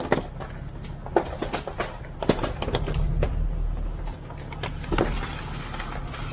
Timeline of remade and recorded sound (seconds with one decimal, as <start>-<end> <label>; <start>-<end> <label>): 0.0-1.5 recorded; 1.5-5.3 remade; 5.3-6.3 recorded